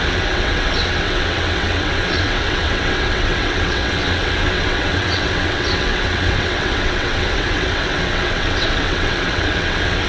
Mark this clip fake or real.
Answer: fake